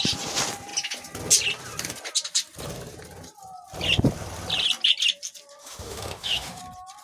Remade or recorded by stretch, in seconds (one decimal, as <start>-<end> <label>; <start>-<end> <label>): 0.0-5.6 recorded; 5.6-6.6 remade; 6.6-7.0 recorded